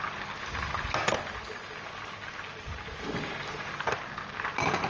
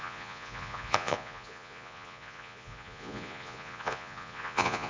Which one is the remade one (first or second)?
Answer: second